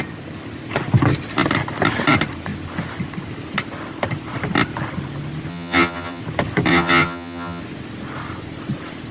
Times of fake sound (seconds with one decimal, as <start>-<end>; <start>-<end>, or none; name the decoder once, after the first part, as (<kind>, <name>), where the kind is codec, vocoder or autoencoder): 5.5-6.2 (vocoder, HiFi-GAN); 6.7-7.6